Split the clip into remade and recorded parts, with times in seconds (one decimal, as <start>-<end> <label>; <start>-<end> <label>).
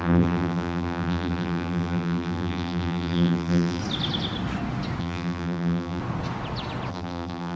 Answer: 0.0-3.8 remade; 3.8-5.0 recorded; 5.0-6.0 remade; 6.0-6.9 recorded; 6.9-7.6 remade